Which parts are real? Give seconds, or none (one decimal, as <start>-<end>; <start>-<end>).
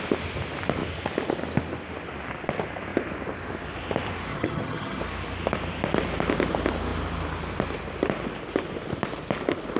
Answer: 0.0-4.3; 5.0-9.8